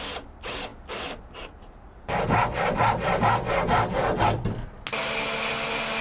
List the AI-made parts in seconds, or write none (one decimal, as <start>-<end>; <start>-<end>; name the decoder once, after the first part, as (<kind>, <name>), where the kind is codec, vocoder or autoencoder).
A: none